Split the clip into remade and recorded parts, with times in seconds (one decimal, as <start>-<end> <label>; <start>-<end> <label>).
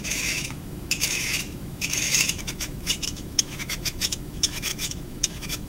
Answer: 0.0-5.7 remade